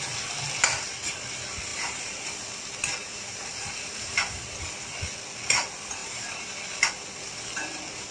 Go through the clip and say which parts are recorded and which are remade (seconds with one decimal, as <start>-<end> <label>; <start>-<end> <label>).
0.0-1.7 recorded; 1.7-2.3 remade; 2.3-3.0 recorded; 3.0-4.6 remade; 4.6-6.0 recorded; 6.0-6.5 remade; 6.5-8.1 recorded